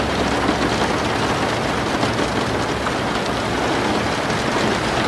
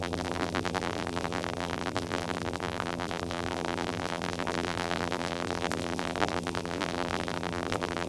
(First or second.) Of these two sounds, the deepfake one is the second